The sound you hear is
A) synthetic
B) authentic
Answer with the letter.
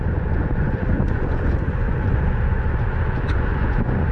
A